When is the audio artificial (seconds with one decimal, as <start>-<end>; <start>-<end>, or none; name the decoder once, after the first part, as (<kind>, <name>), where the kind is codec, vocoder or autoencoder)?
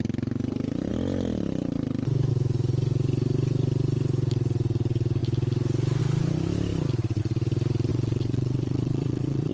7.9-9.5 (vocoder, WaveNeXt)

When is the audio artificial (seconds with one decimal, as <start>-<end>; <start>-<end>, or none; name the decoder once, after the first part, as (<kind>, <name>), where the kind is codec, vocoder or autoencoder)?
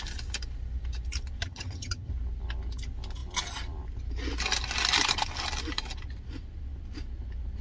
1.4-2.1 (vocoder, HiFi-GAN)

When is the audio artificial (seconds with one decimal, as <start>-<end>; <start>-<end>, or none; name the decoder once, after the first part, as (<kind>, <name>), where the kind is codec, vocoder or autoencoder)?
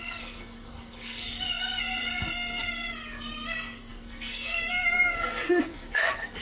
0.0-6.4 (codec, SNAC)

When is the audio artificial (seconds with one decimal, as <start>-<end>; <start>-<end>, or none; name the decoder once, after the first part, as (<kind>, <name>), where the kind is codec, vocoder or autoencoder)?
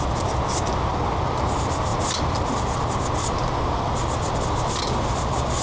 none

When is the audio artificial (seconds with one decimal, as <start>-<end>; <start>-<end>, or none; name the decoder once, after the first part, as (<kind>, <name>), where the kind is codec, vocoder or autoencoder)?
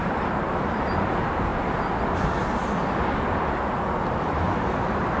0.0-1.5 (vocoder, BigVGAN v2); 4.1-5.2